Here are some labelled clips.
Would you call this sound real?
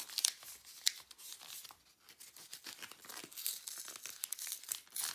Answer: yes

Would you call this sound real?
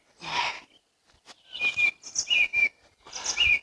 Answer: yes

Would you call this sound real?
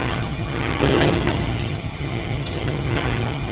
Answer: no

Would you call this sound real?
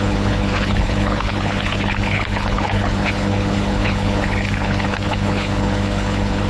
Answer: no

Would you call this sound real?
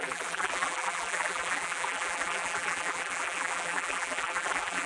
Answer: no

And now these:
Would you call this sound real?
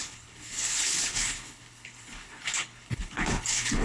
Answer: no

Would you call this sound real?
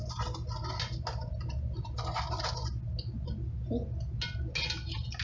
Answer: yes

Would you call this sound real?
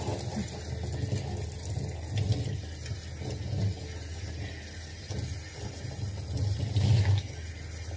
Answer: yes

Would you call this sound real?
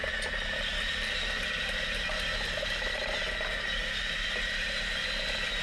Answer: yes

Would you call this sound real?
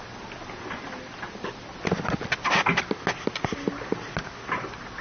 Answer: yes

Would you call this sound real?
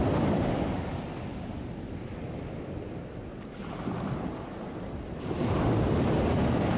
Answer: yes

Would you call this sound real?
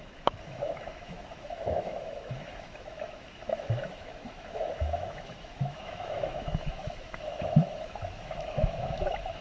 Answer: no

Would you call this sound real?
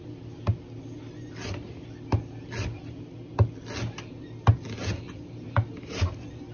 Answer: yes